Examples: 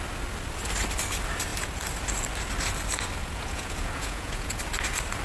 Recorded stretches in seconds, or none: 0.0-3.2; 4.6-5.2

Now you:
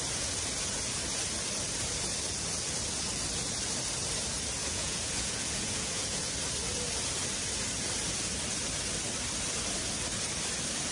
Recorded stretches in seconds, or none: 0.0-4.6; 6.3-10.9

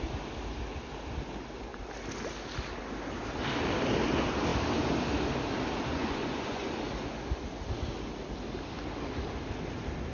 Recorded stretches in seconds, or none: 0.0-5.9; 6.7-10.1

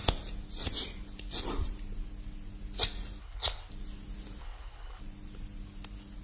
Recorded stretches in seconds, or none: 0.0-3.2; 3.7-4.4; 5.0-6.2

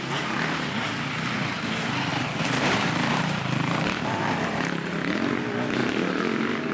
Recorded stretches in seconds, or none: 0.0-2.1; 4.6-5.8